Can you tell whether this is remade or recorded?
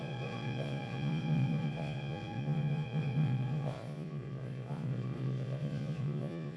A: remade